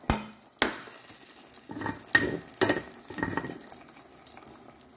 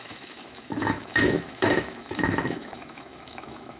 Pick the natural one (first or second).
first